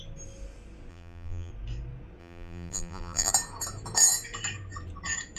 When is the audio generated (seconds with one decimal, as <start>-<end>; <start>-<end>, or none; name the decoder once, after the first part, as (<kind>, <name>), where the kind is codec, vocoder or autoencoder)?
0.9-1.5 (vocoder, BigVGAN v2); 2.2-3.3